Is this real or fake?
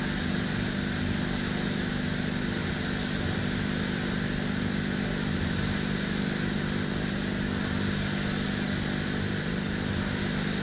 real